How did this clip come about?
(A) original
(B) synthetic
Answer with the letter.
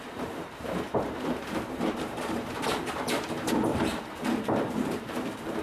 B